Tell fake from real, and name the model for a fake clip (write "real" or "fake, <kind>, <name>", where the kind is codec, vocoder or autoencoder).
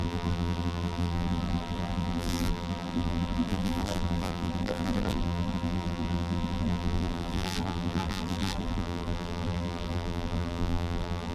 fake, vocoder, BigVGAN v2